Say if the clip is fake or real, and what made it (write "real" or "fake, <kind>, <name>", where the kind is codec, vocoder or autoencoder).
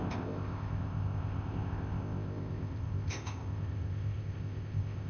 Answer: fake, codec, ZipCodec